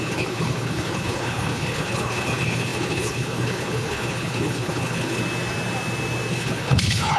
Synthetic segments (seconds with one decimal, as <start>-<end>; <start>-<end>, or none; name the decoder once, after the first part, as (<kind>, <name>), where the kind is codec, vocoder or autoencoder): 0.0-5.2 (codec, HILCodec); 6.3-7.2